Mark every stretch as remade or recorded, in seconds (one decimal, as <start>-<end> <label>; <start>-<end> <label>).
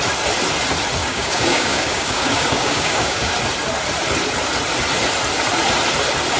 0.0-1.0 recorded; 1.0-3.3 remade; 3.3-6.4 recorded